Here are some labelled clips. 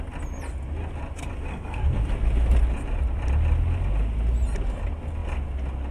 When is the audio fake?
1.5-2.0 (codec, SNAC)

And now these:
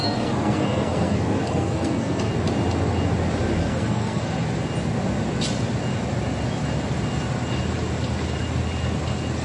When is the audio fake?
0.0-2.3 (codec, SNAC); 3.6-4.2

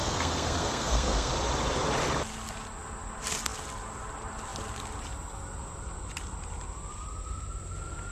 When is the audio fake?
0.0-1.3 (codec, SNAC)

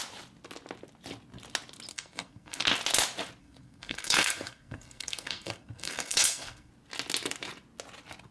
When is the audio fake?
1.9-2.6 (codec, SNAC); 3.4-6.7

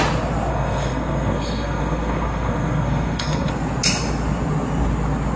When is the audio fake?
0.5-3.5 (codec, SNAC)

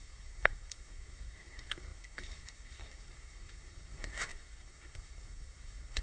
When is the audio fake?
0.0-6.0 (codec, SNAC)